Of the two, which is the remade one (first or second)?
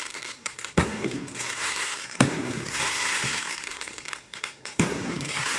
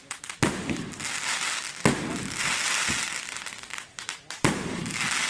first